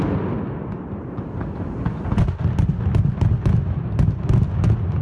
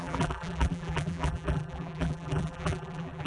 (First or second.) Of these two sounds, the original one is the first